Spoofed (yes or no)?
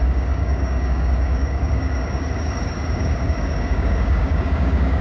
yes